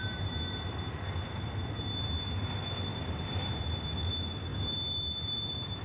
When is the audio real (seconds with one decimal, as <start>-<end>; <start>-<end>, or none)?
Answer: 0.6-2.9; 3.6-4.5